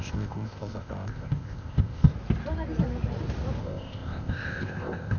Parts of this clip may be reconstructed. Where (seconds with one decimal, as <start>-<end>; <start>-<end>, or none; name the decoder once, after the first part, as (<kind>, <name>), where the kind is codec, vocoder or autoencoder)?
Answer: 0.0-2.1 (codec, ZipCodec); 3.6-5.2

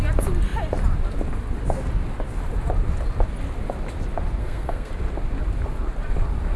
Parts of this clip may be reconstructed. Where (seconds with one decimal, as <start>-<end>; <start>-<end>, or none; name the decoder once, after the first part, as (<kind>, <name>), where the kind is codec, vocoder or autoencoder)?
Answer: 4.4-4.9 (codec, SNAC)

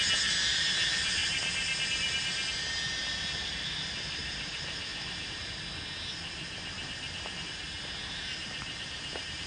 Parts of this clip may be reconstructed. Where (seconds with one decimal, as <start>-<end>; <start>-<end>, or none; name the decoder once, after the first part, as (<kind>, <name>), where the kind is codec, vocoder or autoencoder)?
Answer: 1.2-2.5 (vocoder, BigVGAN v2)

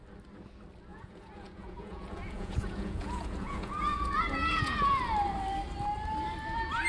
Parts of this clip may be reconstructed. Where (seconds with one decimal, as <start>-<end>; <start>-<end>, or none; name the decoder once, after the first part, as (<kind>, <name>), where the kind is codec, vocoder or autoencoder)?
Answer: 0.9-5.0 (vocoder, Vocos)

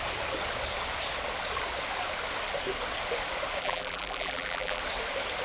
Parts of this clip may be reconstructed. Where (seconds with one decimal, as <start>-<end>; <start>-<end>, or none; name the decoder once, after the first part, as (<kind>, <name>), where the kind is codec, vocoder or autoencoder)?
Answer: 3.6-4.8 (vocoder, BigVGAN v2)

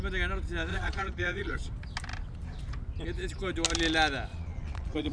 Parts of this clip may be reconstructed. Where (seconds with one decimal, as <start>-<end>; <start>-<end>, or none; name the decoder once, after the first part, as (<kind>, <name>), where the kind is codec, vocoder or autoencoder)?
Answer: 0.7-1.7 (vocoder, Vocos); 4.3-5.1

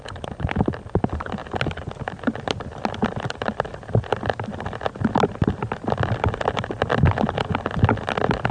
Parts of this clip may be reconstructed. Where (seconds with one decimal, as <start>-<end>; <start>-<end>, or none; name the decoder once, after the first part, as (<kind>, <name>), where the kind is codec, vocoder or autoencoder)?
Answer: none

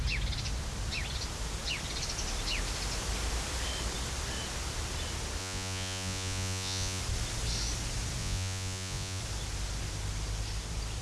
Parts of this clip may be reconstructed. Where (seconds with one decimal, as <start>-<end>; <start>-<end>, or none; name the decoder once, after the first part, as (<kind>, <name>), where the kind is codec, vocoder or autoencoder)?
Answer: 5.4-7.0 (vocoder, Vocos); 8.2-9.2